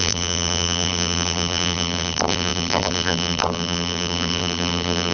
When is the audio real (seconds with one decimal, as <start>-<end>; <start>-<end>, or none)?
none